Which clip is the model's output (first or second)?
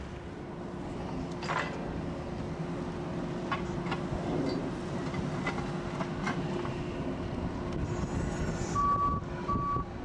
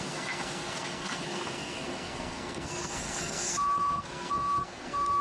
second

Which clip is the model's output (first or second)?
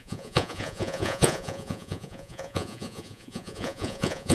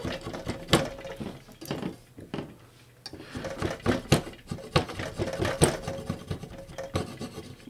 first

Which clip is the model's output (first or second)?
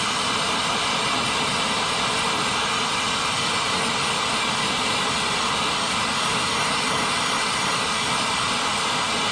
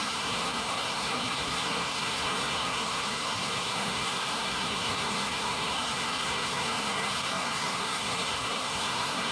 second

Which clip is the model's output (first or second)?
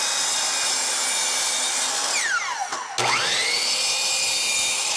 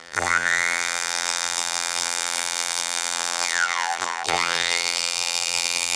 second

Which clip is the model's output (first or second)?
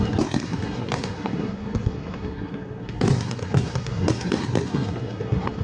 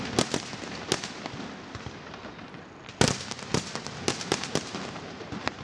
first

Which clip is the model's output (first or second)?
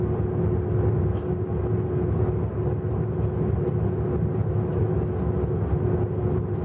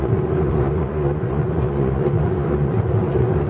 second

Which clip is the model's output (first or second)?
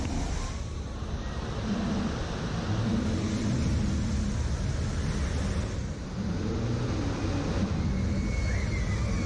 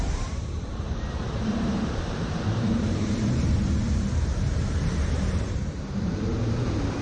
second